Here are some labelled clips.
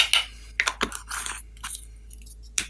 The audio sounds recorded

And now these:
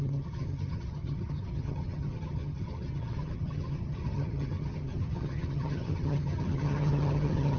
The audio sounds remade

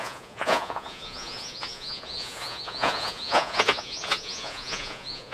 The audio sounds remade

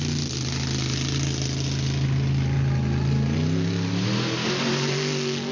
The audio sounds recorded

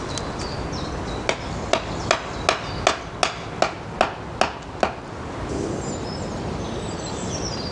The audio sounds recorded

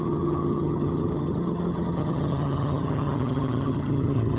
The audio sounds remade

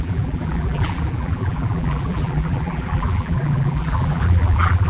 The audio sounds remade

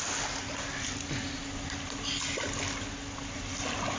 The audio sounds recorded